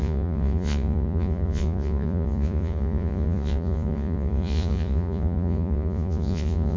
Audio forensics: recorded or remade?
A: remade